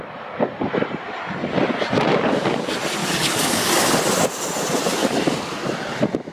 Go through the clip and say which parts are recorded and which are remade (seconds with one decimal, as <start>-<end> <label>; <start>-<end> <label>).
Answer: 0.0-2.1 recorded; 2.1-2.6 remade; 2.6-3.0 recorded; 3.0-4.0 remade; 4.0-5.0 recorded; 5.0-5.5 remade; 5.5-6.3 recorded